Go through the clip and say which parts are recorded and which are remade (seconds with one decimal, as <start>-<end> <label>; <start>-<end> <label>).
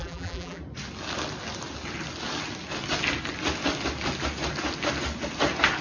0.0-0.6 remade; 0.6-5.8 recorded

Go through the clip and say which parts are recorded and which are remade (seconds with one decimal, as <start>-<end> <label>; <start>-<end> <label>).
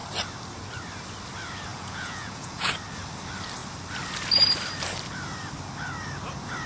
0.0-1.7 recorded; 1.7-2.7 remade; 2.7-6.7 recorded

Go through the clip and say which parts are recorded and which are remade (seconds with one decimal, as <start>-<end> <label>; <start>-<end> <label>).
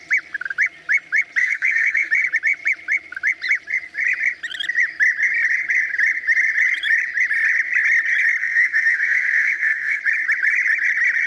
0.0-1.4 recorded; 1.4-2.1 remade; 2.1-8.4 recorded; 8.4-10.0 remade; 10.0-11.3 recorded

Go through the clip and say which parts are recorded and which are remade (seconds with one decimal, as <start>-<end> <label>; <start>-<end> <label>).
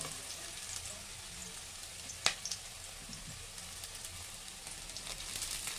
0.0-5.8 recorded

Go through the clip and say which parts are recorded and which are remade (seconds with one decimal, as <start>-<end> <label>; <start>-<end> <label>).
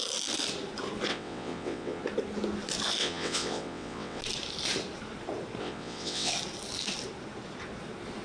0.0-1.1 recorded; 1.1-2.0 remade; 2.0-3.0 recorded; 3.0-4.2 remade; 4.2-5.6 recorded; 5.6-6.3 remade; 6.3-8.2 recorded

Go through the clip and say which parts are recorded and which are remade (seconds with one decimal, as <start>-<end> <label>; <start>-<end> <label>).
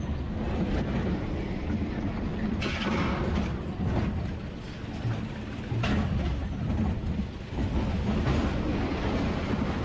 0.0-9.8 recorded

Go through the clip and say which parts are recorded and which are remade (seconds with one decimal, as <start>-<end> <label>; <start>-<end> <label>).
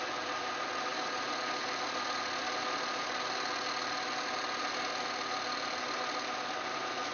0.0-7.1 recorded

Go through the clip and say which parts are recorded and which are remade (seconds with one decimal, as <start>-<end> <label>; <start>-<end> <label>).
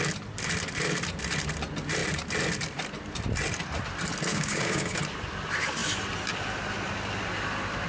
0.0-4.3 recorded; 4.3-5.0 remade; 5.0-7.9 recorded